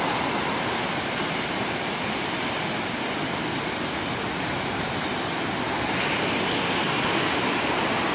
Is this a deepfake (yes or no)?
no